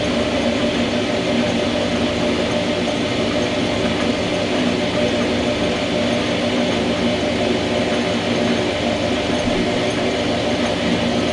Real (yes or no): yes